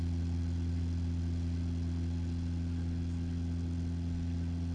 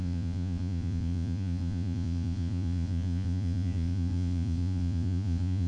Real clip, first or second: first